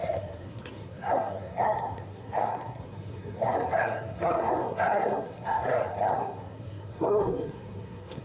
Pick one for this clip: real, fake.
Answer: fake